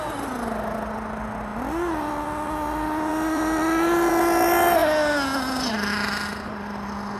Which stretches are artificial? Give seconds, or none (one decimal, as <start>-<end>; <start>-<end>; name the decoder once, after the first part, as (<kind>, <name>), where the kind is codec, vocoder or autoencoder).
1.5-2.1 (vocoder, BigVGAN v2); 3.1-4.1